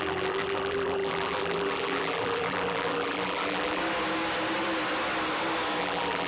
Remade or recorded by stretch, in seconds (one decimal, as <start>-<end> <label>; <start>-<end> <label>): 0.0-3.8 remade; 3.8-5.8 recorded; 5.8-6.3 remade